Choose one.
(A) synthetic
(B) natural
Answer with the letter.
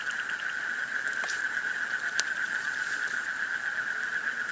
B